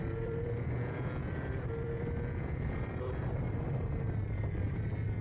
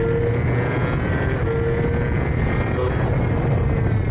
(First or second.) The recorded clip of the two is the second